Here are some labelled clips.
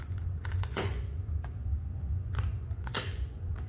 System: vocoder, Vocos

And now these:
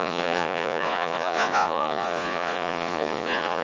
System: vocoder, Vocos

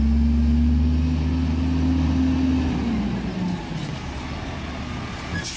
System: none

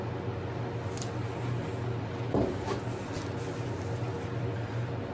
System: none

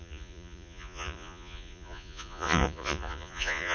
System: vocoder, Vocos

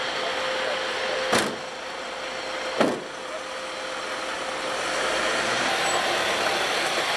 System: none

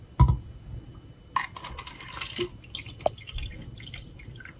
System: none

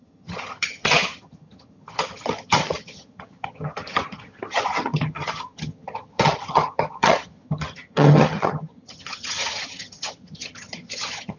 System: vocoder, HiFi-GAN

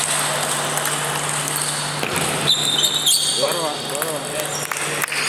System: none